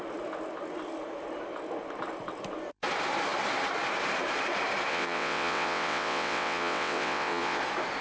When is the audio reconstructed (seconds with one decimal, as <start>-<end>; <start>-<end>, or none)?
4.9-7.6